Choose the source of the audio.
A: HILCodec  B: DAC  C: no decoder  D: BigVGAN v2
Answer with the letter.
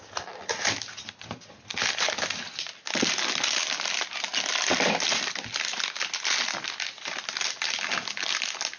C